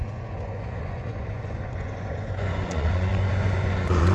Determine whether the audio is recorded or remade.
remade